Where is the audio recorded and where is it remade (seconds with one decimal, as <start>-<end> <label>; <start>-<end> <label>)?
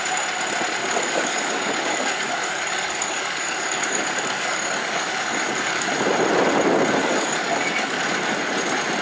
0.0-0.8 recorded; 0.8-5.9 remade; 5.9-7.0 recorded; 7.0-8.0 remade; 8.0-9.0 recorded